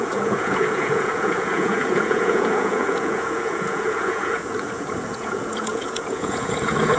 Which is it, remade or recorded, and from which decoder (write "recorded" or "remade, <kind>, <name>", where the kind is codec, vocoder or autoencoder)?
remade, vocoder, Vocos